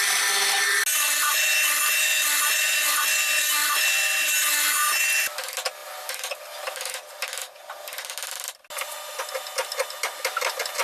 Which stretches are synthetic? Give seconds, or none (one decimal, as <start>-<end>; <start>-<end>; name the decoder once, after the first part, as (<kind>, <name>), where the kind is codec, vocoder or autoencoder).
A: none